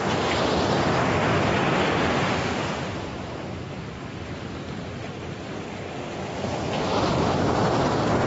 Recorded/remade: recorded